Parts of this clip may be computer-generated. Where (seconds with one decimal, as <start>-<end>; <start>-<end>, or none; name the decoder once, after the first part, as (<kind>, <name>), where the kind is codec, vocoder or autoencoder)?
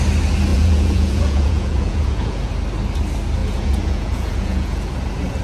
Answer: 0.5-2.5 (vocoder, Vocos); 3.4-4.9